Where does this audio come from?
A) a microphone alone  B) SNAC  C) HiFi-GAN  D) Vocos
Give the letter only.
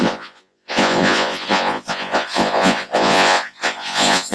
D